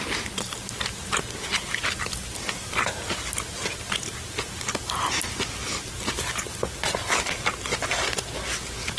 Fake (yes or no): no